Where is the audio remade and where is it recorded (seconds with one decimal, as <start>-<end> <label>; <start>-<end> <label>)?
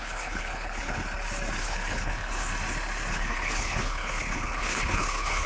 0.0-1.0 remade; 1.0-1.6 recorded; 1.6-2.5 remade; 2.5-3.1 recorded; 3.1-5.5 remade